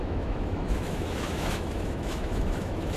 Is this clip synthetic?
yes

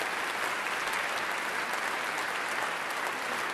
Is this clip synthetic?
no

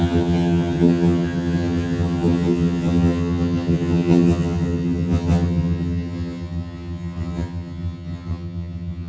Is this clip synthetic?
yes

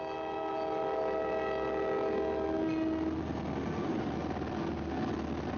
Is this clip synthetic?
no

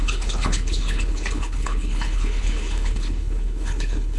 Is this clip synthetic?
yes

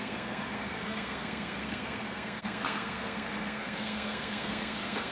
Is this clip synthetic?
yes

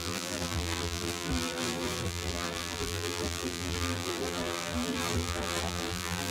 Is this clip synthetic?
yes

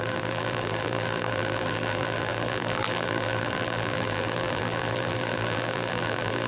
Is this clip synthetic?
yes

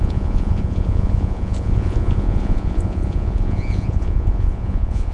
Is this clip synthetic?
yes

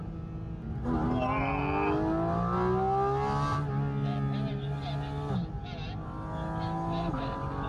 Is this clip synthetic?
no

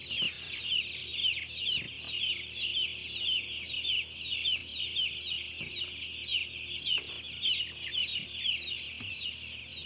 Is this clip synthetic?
no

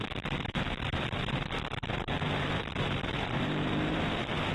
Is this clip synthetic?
yes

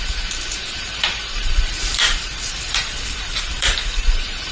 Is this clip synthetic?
yes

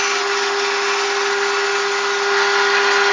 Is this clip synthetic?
no